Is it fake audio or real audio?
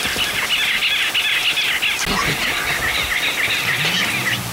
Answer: real